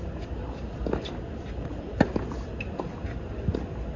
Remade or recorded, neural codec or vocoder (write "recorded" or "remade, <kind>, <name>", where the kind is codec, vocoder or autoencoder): recorded